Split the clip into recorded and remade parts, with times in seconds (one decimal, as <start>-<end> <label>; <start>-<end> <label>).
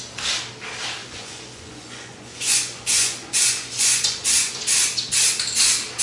0.0-1.0 recorded; 1.0-4.6 remade; 4.6-6.0 recorded